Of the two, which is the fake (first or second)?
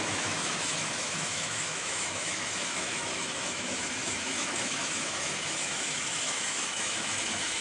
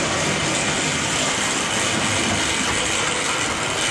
first